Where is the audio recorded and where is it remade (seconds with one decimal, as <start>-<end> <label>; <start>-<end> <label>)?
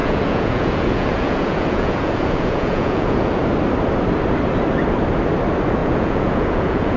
0.0-3.4 remade; 3.4-5.8 recorded; 5.8-7.0 remade